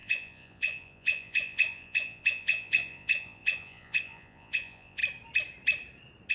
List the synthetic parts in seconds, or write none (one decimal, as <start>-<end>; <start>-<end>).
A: 0.0-5.0